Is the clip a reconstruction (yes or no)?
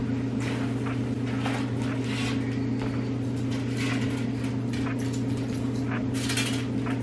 no